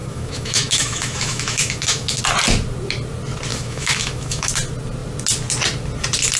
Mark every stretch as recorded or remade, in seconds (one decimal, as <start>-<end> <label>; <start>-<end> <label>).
0.0-2.2 remade; 2.2-3.5 recorded; 3.5-4.5 remade; 4.5-6.4 recorded